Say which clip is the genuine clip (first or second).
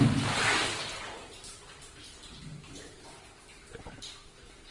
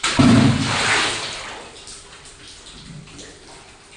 second